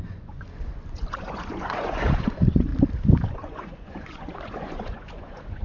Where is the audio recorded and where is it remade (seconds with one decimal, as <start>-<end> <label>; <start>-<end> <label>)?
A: 0.0-2.7 remade; 2.7-3.3 recorded; 3.3-5.6 remade

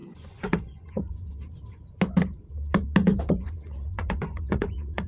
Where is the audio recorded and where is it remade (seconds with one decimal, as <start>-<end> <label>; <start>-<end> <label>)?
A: 0.0-1.4 remade; 1.4-3.0 recorded; 3.0-5.1 remade

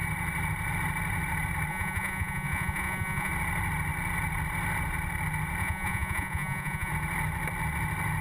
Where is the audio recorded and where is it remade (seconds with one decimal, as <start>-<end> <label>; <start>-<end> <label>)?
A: 0.0-1.7 recorded; 1.7-3.3 remade; 3.3-5.6 recorded; 5.6-6.9 remade; 6.9-8.2 recorded

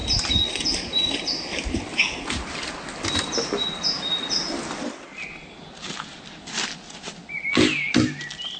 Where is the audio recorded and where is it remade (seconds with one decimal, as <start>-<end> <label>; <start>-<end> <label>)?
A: 0.0-8.6 recorded

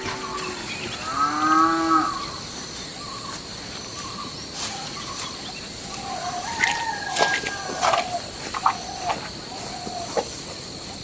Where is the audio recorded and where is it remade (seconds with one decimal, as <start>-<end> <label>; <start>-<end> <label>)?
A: 0.0-4.2 recorded; 4.2-5.1 remade; 5.1-11.0 recorded

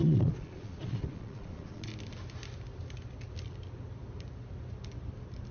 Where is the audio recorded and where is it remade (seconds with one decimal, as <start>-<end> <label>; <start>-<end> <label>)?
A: 0.0-1.9 remade; 1.9-5.5 recorded